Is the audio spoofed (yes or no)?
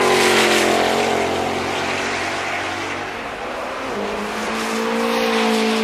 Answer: no